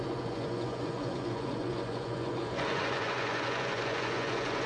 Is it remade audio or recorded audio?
remade